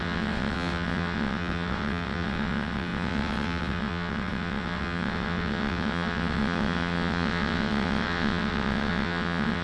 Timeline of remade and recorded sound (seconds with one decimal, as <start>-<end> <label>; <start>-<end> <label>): 0.0-9.6 remade